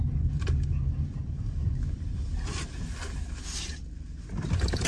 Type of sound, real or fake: real